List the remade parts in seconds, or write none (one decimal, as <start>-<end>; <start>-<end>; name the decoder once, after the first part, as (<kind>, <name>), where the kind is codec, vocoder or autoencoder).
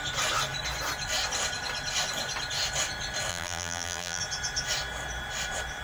3.3-4.2 (vocoder, BigVGAN v2)